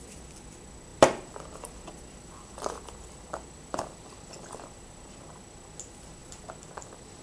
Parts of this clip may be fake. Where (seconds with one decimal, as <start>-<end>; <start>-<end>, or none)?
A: 0.9-5.2; 6.2-7.2